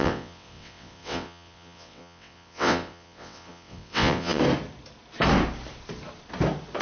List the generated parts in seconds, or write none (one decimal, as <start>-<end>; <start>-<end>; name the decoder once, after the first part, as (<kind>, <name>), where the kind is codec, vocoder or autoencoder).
0.0-4.4 (vocoder, WaveNeXt)